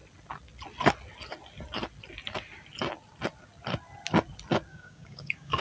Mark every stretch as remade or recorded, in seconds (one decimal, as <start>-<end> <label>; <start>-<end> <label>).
0.0-4.7 recorded; 4.7-5.6 remade